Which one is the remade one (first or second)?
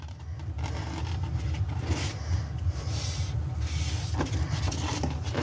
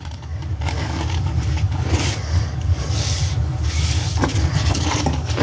second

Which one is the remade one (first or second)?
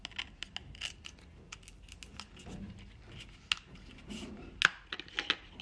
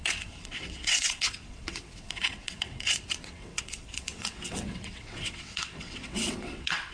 second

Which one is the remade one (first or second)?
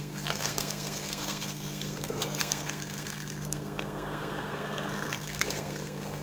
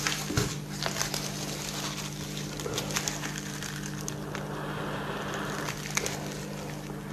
first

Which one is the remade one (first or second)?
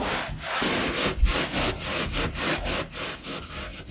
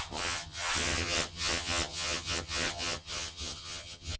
second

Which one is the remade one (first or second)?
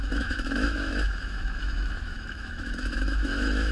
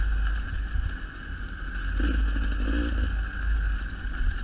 first